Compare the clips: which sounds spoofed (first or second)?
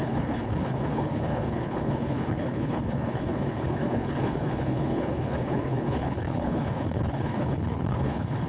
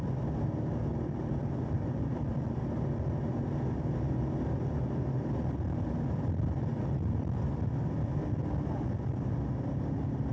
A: first